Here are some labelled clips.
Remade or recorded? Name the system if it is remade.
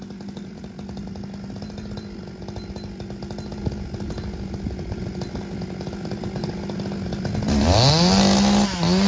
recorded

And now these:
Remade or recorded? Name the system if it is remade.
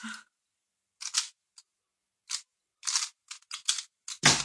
recorded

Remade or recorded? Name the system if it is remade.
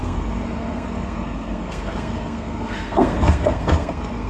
remade, codec, SNAC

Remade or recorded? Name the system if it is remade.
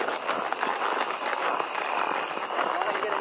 recorded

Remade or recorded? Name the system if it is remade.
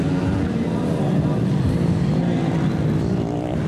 recorded